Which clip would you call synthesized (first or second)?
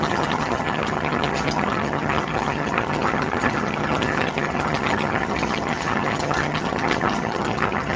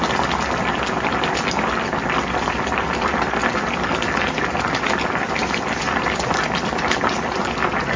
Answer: first